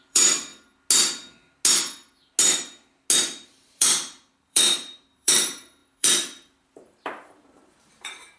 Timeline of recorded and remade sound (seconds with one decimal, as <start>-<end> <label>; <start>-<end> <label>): 0.0-0.5 remade; 0.5-3.2 recorded; 3.2-8.4 remade